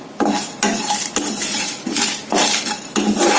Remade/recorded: recorded